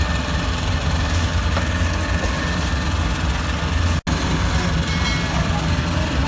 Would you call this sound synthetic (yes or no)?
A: no